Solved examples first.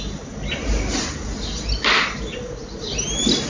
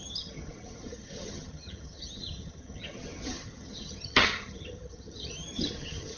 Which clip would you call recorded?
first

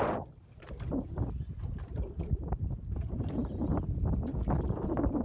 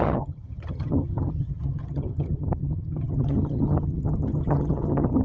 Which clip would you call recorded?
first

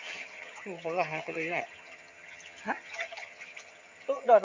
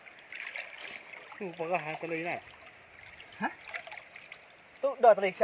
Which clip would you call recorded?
second